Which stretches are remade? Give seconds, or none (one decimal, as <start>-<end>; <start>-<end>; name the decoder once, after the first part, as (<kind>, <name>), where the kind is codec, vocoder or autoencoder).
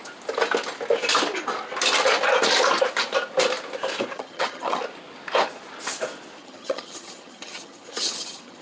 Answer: 4.1-4.8 (vocoder, HiFi-GAN); 6.4-8.6